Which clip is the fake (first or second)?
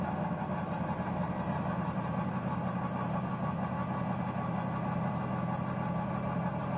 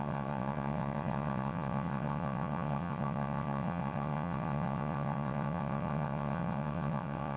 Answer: second